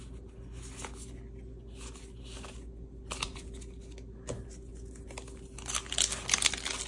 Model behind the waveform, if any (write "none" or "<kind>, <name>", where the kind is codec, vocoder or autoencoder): none